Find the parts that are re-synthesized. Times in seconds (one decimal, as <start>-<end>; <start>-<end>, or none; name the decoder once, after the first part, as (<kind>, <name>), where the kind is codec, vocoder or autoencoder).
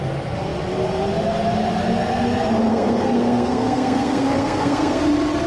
2.7-5.0 (codec, SNAC)